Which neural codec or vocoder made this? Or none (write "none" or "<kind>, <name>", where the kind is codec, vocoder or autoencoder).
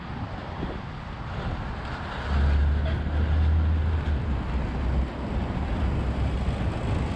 none